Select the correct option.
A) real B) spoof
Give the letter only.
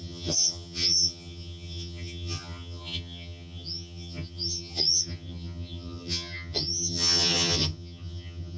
B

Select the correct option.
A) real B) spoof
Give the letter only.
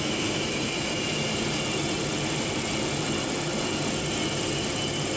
A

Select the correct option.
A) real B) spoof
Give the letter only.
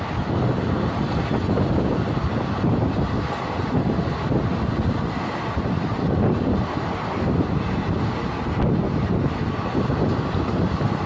A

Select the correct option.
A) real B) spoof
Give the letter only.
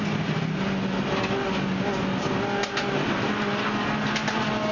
A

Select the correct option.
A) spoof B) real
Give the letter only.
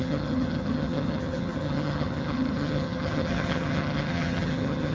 A